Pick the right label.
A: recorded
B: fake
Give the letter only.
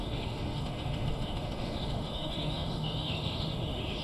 B